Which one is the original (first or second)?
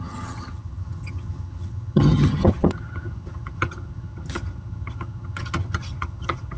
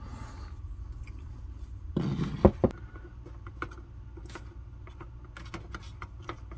second